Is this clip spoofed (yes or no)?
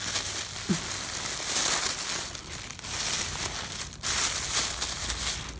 no